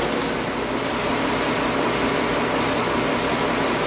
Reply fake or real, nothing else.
real